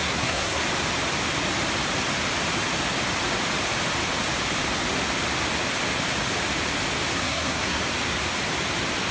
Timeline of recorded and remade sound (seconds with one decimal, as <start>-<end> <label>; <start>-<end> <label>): 0.0-0.6 remade; 0.6-7.1 recorded; 7.1-7.8 remade; 7.8-9.1 recorded